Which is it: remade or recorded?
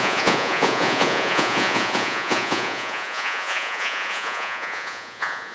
remade